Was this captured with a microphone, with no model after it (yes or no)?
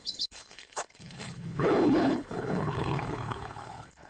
no